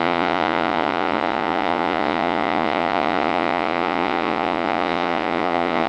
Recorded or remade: remade